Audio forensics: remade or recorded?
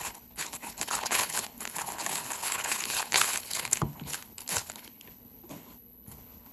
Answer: remade